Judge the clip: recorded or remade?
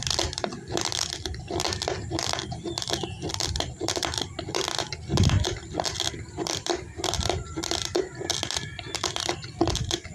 remade